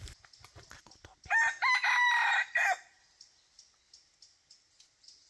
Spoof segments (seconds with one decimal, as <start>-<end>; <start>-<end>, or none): none